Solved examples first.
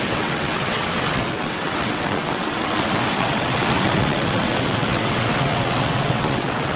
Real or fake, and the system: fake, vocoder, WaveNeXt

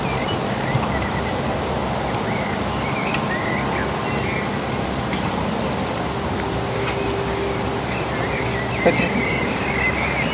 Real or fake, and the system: real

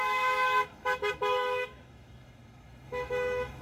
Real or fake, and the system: fake, autoencoder, DAC-VAE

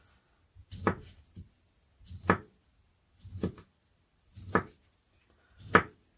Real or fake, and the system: real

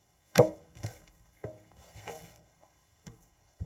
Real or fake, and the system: fake, codec, SNAC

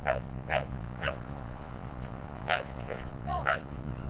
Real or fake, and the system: fake, vocoder, Vocos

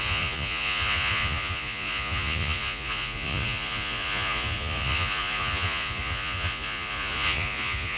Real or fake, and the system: fake, vocoder, Vocos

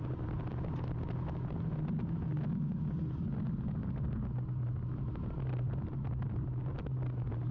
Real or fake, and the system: real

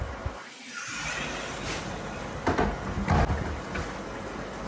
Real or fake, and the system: real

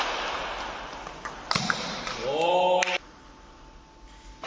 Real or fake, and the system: real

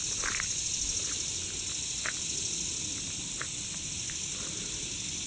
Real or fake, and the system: real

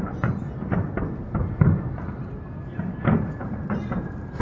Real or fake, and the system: real